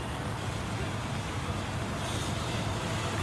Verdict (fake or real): real